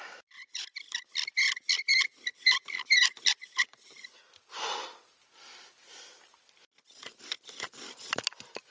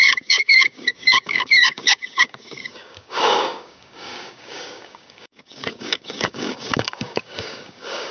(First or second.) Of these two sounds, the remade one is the second